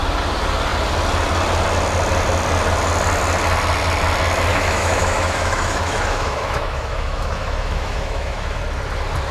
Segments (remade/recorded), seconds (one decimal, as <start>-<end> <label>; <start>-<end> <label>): 0.0-4.5 recorded; 4.5-8.6 remade; 8.6-9.3 recorded

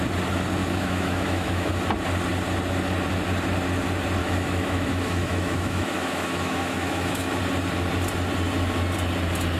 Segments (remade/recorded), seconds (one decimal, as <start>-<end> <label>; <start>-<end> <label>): 0.0-0.6 recorded; 0.6-1.7 remade; 1.7-4.2 recorded; 4.2-7.4 remade; 7.4-9.6 recorded

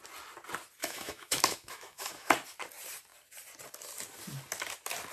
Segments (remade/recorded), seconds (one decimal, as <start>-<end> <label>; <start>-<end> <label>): 0.0-0.8 recorded; 0.8-2.3 remade; 2.3-5.1 recorded

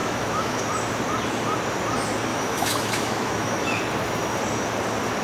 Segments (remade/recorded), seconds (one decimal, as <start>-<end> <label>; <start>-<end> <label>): 0.0-0.6 remade; 0.6-2.3 recorded; 2.3-3.8 remade; 3.8-5.2 recorded